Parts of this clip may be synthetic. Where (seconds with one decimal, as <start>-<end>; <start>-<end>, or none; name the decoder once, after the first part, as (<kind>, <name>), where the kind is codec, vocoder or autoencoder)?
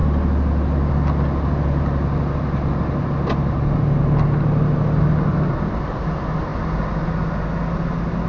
none